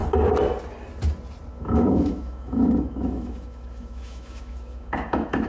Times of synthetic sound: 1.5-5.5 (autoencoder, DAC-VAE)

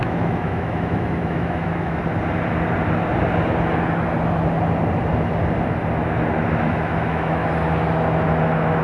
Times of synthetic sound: 0.0-2.0 (autoencoder, DAC-VAE); 6.7-7.4; 8.4-8.8

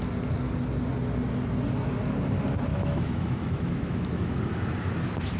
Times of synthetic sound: 2.7-4.4 (autoencoder, DAC-VAE)